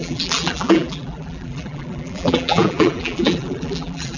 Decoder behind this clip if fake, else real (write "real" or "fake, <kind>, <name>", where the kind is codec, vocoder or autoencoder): fake, vocoder, BigVGAN v2